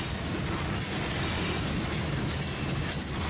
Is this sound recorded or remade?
recorded